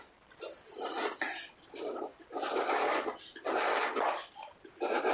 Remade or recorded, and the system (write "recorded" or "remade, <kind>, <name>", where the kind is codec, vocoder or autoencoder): recorded